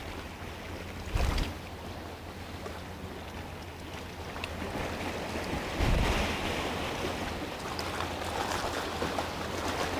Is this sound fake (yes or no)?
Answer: no